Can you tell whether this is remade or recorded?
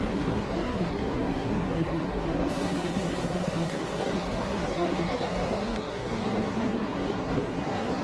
remade